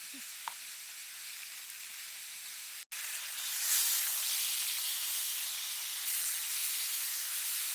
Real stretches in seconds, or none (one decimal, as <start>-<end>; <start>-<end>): 1.3-2.1; 2.8-4.9; 5.4-6.5